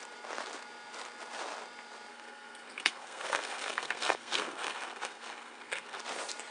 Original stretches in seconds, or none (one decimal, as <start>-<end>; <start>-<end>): 0.0-2.1; 6.0-6.5